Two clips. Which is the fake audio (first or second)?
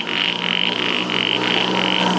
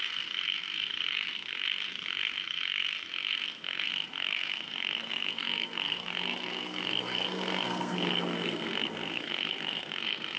second